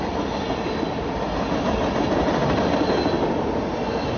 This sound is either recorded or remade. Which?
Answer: recorded